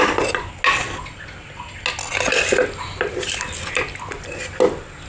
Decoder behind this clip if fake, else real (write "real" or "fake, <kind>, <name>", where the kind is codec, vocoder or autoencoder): real